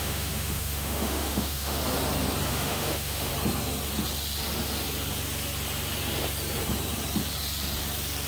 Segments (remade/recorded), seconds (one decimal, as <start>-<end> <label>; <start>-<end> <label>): 0.0-1.8 remade; 1.8-2.5 recorded; 2.5-3.3 remade; 3.3-8.3 recorded